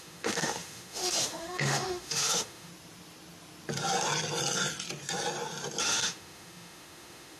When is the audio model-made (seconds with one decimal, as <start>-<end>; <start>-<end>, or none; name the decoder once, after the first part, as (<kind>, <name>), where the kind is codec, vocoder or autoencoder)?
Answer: 0.0-2.7 (autoencoder, DAC-VAE); 5.8-7.4